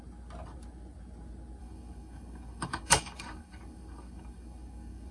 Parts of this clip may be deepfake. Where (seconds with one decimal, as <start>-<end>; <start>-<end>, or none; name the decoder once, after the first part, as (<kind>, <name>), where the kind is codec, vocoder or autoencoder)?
1.6-5.1 (codec, DAC)